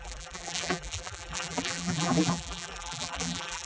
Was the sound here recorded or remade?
remade